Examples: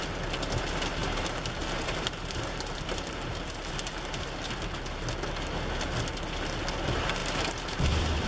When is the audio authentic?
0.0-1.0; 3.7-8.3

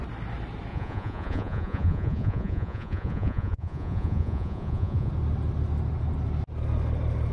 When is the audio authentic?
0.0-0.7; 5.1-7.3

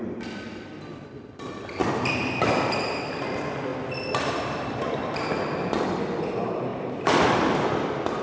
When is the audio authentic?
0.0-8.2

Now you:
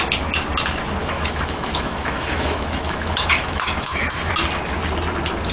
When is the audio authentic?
0.0-1.0; 4.3-5.5